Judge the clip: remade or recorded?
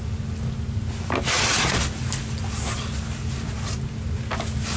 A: recorded